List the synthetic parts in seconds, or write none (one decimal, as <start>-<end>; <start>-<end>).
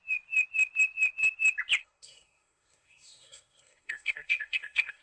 1.8-5.0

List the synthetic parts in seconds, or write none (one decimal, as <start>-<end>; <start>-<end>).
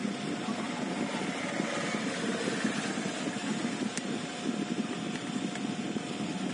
none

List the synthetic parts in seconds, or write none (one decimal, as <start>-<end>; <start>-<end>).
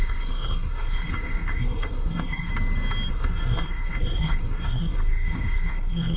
0.0-2.5; 3.1-6.2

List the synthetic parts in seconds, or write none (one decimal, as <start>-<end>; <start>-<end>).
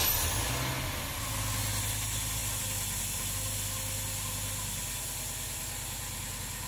none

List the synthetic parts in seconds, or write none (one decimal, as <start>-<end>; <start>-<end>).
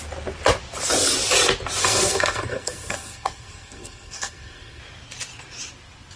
1.8-4.8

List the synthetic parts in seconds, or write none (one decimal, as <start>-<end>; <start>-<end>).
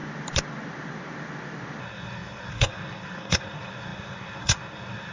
1.8-5.1